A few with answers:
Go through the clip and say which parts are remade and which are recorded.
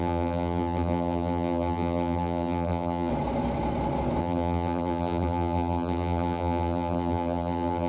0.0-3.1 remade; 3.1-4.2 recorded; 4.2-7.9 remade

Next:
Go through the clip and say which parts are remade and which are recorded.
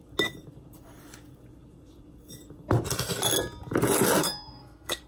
0.0-4.2 recorded; 4.2-5.1 remade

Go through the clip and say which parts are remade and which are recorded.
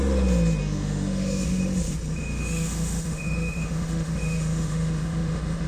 0.0-0.6 recorded; 0.6-1.6 remade; 1.6-2.2 recorded; 2.2-5.7 remade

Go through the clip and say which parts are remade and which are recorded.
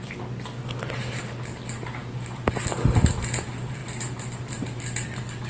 0.0-3.8 recorded; 3.8-5.5 remade